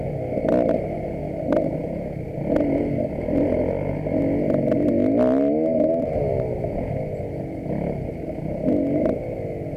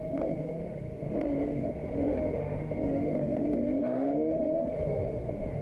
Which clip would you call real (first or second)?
first